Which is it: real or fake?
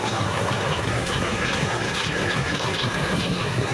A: fake